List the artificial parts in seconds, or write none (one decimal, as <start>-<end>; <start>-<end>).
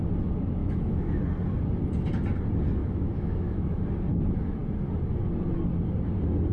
0.6-1.2; 2.8-3.8